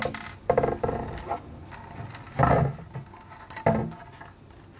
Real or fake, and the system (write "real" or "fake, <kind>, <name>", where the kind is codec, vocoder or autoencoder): real